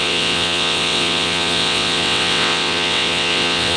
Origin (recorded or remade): remade